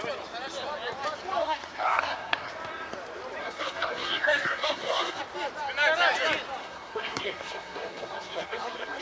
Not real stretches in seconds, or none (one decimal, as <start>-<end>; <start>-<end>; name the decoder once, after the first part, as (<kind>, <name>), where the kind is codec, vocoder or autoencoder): 1.4-2.5 (codec, SNAC); 3.4-5.2; 6.6-9.0